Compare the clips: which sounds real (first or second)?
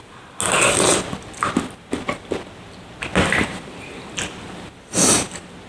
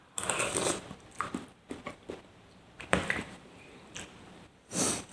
first